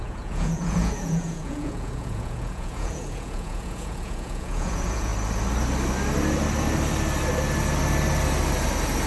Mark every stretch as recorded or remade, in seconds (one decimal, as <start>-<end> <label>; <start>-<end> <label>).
0.0-5.1 remade; 5.1-9.1 recorded